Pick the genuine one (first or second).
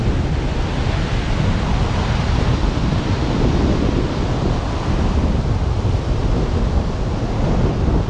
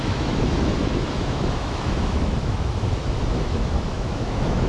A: first